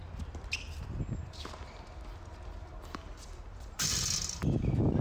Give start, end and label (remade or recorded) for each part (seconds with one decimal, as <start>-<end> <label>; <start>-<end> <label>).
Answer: 0.0-0.8 recorded; 0.8-5.0 remade